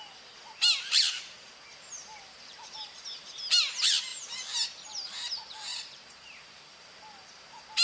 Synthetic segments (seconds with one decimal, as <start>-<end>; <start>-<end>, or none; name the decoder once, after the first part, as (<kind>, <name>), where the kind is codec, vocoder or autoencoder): 1.7-3.6 (vocoder, BigVGAN v2); 5.7-6.9